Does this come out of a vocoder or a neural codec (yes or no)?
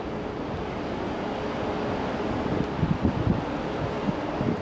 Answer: no